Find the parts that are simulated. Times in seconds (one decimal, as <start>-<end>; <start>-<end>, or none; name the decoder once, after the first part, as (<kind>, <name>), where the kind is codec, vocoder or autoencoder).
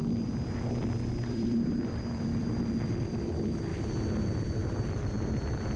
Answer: 1.3-2.3 (vocoder, BigVGAN v2); 3.0-3.7; 4.8-5.8